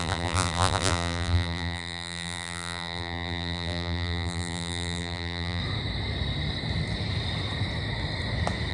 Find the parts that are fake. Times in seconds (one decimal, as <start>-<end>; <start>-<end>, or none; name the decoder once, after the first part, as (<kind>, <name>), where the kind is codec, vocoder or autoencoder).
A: 0.0-5.6 (vocoder, BigVGAN v2)